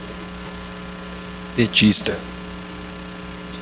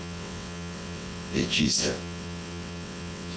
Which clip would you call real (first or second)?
first